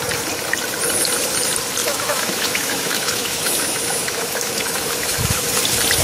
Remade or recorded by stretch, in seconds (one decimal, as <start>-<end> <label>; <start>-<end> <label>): 0.0-1.8 recorded; 1.8-5.4 remade; 5.4-6.0 recorded